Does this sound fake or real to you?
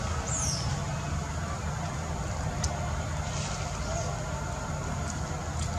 real